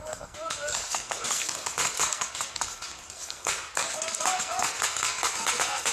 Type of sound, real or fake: fake